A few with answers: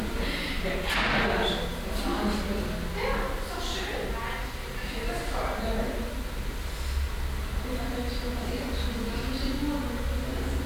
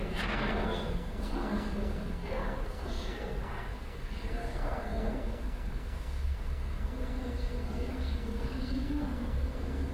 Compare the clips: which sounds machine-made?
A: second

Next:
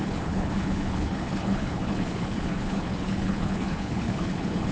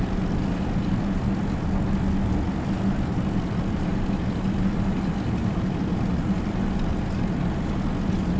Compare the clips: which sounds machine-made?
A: first